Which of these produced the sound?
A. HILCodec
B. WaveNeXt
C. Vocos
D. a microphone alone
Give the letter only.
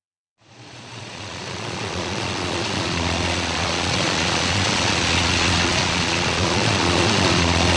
C